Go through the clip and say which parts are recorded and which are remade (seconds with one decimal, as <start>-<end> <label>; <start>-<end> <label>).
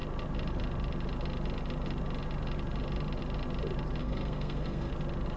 0.0-4.0 recorded; 4.0-4.9 remade; 4.9-5.4 recorded